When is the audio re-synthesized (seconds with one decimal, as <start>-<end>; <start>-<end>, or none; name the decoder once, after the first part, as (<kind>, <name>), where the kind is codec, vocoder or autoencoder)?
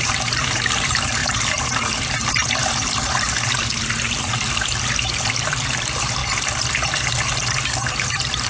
0.0-6.2 (vocoder, BigVGAN v2)